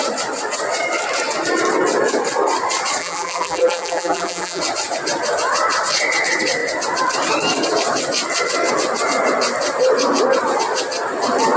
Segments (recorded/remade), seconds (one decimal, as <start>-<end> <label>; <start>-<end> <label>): 0.0-3.0 recorded; 3.0-4.6 remade; 4.6-11.6 recorded